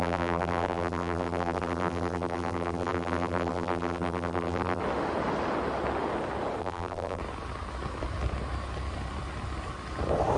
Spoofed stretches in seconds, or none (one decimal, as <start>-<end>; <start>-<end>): 0.0-4.8; 6.6-7.2